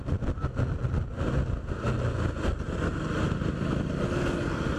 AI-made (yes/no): no